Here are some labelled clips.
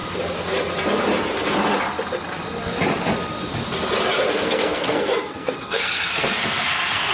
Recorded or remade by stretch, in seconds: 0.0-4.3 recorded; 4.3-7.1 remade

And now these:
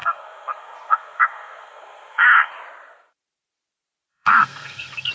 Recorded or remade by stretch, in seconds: 0.0-2.5 remade; 2.5-4.1 recorded; 4.1-5.1 remade

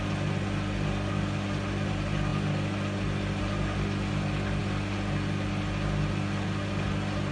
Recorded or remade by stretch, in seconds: 0.0-7.3 recorded